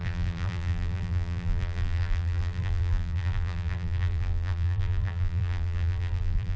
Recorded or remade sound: remade